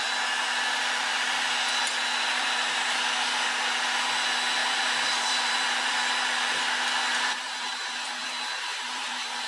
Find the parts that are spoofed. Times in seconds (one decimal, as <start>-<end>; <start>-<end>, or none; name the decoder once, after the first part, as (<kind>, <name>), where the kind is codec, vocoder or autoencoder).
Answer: 4.6-5.9 (vocoder, BigVGAN v2); 7.1-7.8; 8.7-9.5